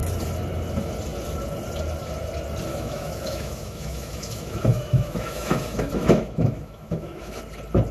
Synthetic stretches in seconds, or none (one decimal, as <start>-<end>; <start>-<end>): 2.7-7.4